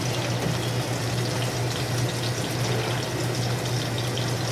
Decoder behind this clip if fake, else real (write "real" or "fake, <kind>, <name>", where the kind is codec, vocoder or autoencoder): real